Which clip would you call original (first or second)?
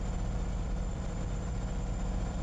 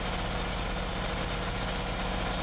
second